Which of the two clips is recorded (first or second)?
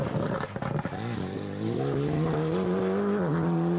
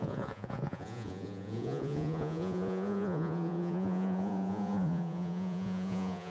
first